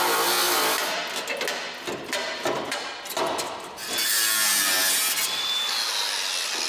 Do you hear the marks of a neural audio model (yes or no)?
no